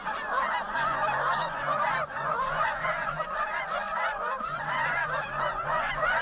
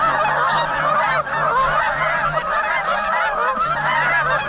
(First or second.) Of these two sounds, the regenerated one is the first